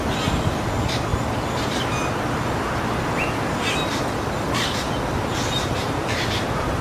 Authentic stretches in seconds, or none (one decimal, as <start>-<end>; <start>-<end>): 0.0-5.8